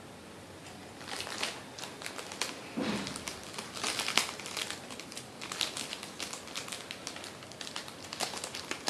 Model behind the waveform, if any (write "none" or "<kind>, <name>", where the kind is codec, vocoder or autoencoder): none